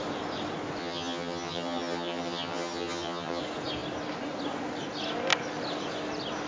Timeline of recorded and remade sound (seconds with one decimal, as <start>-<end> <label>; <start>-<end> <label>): 0.0-0.8 recorded; 0.8-3.4 remade; 3.4-6.5 recorded